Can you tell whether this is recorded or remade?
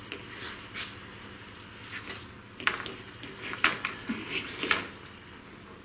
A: recorded